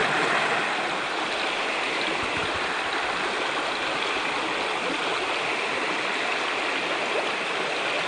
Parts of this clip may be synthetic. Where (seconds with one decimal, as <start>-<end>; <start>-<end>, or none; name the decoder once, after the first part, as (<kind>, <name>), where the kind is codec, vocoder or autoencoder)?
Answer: none